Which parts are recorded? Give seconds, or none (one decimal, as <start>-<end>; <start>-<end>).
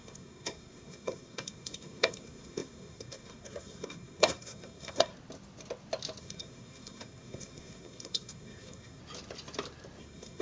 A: 5.1-6.2; 9.0-10.0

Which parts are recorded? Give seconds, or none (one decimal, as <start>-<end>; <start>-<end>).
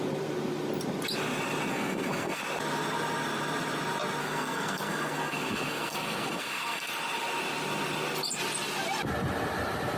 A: 0.0-1.7; 2.4-4.2; 6.9-10.0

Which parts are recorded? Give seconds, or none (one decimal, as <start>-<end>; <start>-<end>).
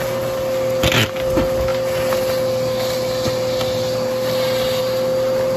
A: 0.0-5.6